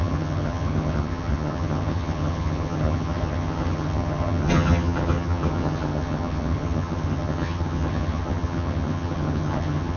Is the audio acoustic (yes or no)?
no